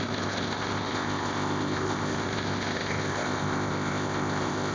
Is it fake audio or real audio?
fake